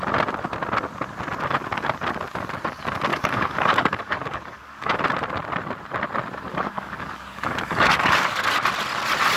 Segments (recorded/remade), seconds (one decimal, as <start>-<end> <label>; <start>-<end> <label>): 0.0-3.1 recorded; 3.1-5.0 remade; 5.0-6.5 recorded; 6.5-8.4 remade; 8.4-9.4 recorded